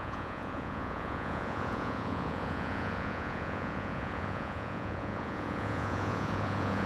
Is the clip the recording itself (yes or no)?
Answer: no